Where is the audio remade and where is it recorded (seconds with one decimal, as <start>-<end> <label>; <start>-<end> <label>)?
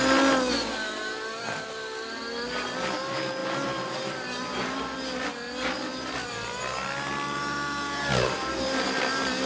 0.0-9.5 recorded